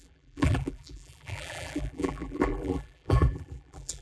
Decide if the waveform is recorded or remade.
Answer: remade